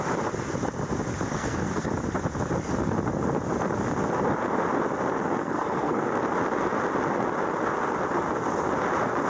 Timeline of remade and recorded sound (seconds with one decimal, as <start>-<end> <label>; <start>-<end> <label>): 0.0-1.3 recorded; 1.3-1.9 remade; 1.9-5.4 recorded; 5.4-6.1 remade; 6.1-9.3 recorded